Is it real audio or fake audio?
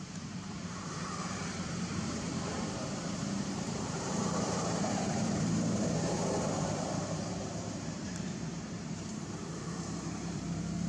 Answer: fake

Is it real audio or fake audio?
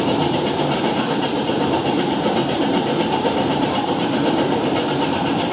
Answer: fake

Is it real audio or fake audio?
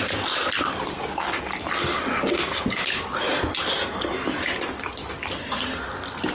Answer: fake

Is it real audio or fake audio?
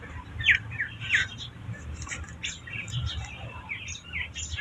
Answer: fake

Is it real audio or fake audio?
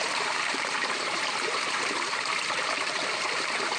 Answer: fake